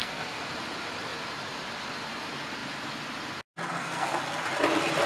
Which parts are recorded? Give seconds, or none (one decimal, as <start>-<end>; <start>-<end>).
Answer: 0.5-3.7; 4.2-5.1